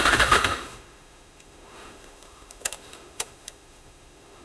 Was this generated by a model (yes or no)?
yes